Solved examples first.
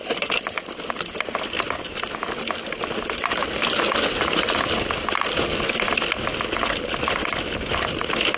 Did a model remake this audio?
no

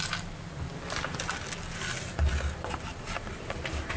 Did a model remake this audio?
yes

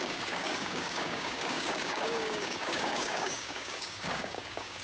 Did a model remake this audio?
yes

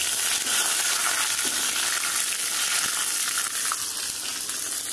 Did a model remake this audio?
no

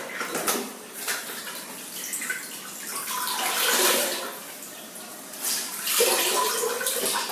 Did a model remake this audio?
no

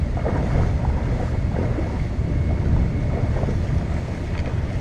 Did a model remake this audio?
no